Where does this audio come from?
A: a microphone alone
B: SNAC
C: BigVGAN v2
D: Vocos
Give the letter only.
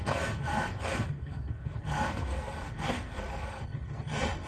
B